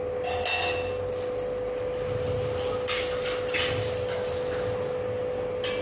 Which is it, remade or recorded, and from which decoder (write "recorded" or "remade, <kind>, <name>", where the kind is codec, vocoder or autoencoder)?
recorded